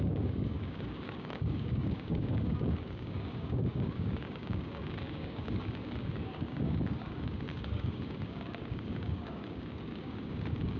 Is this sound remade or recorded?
remade